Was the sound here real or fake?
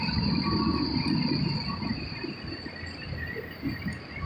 fake